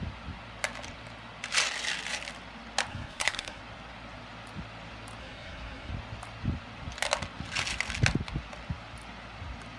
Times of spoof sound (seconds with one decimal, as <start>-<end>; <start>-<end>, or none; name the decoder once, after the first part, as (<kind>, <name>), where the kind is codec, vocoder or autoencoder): 2.9-3.6 (codec, SNAC); 5.2-5.9